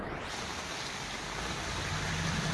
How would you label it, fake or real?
real